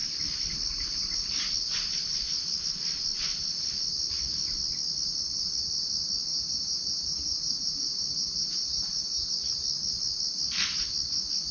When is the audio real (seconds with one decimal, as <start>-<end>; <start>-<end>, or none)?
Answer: 0.0-6.3; 9.3-11.5